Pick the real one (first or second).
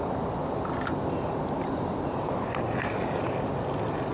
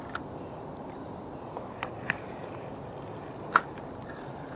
first